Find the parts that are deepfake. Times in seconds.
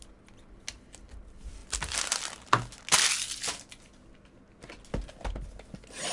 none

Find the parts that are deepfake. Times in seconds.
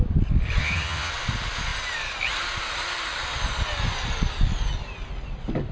0.6-1.1 (vocoder, HiFi-GAN)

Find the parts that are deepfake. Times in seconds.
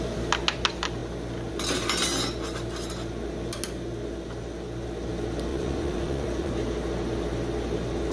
5.5-6.5 (vocoder, Vocos)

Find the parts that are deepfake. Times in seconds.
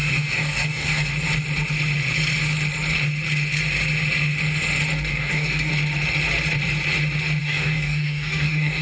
0.0-1.1 (codec, DAC); 5.1-5.7; 7.4-8.8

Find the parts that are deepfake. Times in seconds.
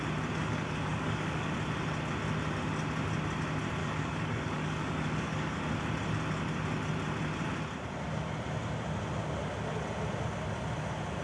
0.4-1.5 (codec, DAC); 3.8-5.6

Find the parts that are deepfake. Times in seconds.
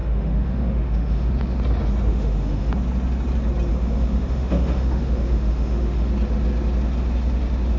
0.0-1.3 (autoencoder, DAC-VAE); 2.1-2.7; 3.7-6.1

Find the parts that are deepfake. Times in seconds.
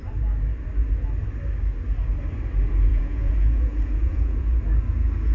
2.9-4.6 (vocoder, Vocos)